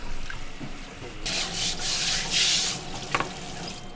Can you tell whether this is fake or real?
real